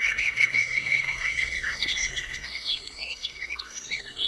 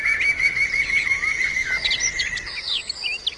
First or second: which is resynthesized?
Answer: first